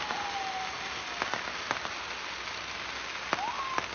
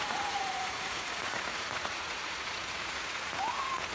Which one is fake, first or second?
second